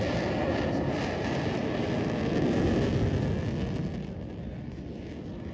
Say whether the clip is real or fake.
real